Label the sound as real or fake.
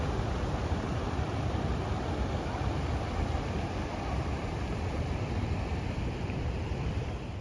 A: fake